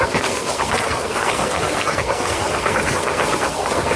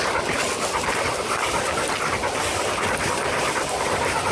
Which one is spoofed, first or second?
first